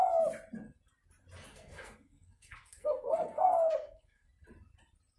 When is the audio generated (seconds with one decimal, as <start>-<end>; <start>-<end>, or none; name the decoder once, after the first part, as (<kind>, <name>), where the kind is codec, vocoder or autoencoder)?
1.5-4.3 (codec, SNAC)